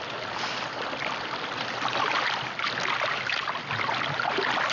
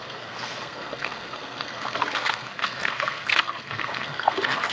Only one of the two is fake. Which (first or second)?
second